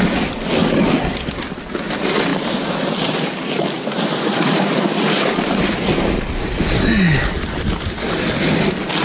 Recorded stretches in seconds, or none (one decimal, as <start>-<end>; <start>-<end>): 0.0-2.3; 6.6-9.0